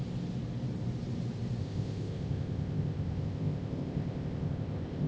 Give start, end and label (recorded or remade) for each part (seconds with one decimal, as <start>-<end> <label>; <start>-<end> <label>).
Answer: 0.0-1.6 recorded; 1.6-5.1 remade